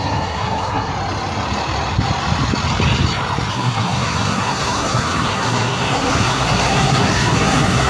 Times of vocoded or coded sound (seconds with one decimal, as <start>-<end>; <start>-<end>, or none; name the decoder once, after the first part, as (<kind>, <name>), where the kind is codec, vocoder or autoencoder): 0.0-0.9 (codec, SNAC); 3.5-7.9

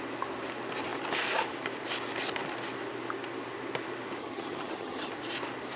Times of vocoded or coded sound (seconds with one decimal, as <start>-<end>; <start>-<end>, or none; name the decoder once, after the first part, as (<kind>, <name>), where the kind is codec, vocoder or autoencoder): 4.2-5.1 (vocoder, HiFi-GAN)

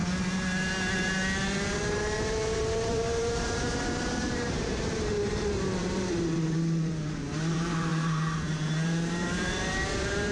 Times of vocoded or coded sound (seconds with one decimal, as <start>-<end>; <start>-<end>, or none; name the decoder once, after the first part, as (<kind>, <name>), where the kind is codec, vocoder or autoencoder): 1.8-10.3 (vocoder, BigVGAN v2)

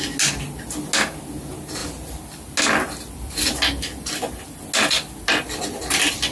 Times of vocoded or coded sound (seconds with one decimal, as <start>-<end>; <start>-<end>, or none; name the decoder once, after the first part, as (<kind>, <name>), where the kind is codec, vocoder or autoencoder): none

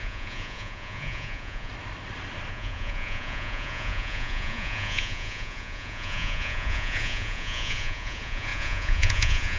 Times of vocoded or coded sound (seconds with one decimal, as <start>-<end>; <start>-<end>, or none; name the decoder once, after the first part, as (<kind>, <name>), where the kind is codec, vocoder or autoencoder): 0.0-1.7 (vocoder, Vocos); 2.5-9.6